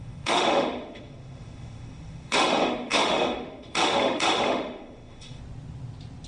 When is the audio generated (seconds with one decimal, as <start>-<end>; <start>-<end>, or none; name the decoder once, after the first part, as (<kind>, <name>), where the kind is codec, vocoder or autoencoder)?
0.0-5.4 (autoencoder, DAC-VAE)